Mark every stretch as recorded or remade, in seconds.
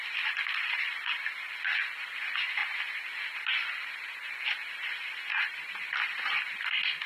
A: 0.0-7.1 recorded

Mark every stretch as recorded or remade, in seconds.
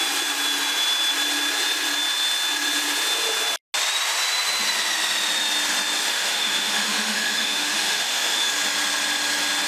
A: 0.0-6.0 recorded; 6.0-8.5 remade; 8.5-9.7 recorded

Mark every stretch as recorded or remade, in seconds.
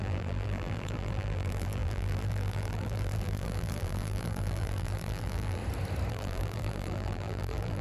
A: 0.0-5.6 remade; 5.6-6.1 recorded; 6.1-7.8 remade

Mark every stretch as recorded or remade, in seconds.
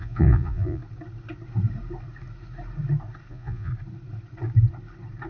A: 0.0-0.8 remade; 0.8-3.3 recorded; 3.3-3.7 remade; 3.7-5.3 recorded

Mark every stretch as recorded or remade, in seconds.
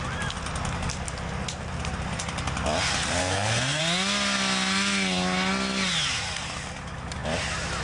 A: 0.0-3.2 recorded; 3.2-3.8 remade; 3.8-7.8 recorded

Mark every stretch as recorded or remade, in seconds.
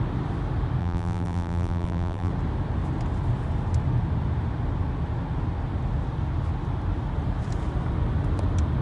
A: 0.0-0.8 recorded; 0.8-2.3 remade; 2.3-8.8 recorded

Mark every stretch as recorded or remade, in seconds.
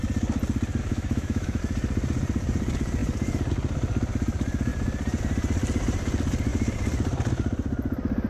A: 0.0-0.8 recorded; 0.8-1.6 remade; 1.6-8.3 recorded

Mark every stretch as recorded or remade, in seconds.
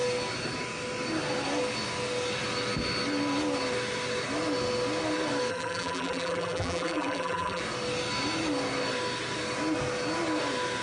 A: 0.0-5.5 recorded; 5.5-7.6 remade; 7.6-10.8 recorded